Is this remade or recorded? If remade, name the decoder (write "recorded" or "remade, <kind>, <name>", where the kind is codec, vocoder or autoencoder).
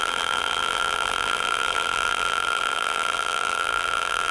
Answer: remade, vocoder, BigVGAN v2